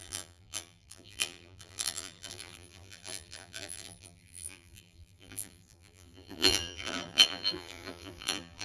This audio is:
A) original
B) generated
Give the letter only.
B